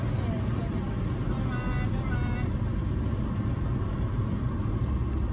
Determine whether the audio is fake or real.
real